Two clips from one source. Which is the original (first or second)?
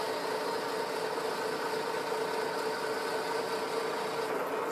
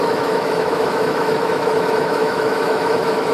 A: first